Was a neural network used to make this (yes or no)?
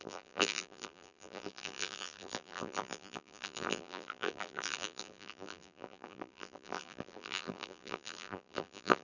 yes